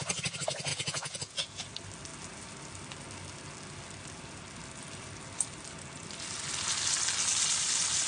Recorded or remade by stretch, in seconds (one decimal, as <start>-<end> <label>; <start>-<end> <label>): 0.0-0.7 recorded; 0.7-1.7 remade; 1.7-8.1 recorded